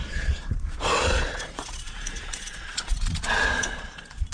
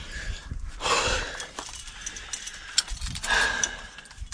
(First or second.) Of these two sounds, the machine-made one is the first